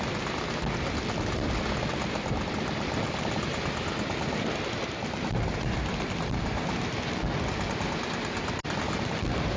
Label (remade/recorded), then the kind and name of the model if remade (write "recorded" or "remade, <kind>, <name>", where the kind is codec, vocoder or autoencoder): recorded